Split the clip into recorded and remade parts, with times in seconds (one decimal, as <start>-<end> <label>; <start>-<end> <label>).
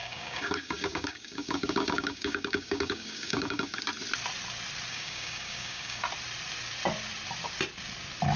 0.0-3.8 remade; 3.8-4.9 recorded; 4.9-6.0 remade; 6.0-8.4 recorded